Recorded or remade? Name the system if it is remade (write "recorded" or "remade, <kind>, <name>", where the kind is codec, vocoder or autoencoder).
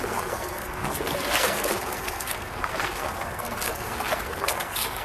remade, codec, SNAC